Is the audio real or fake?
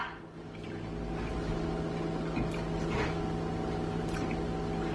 real